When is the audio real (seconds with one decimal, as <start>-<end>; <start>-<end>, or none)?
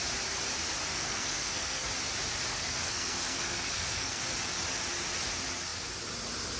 0.0-0.9; 1.9-2.5; 4.2-6.6